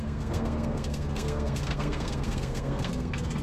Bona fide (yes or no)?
no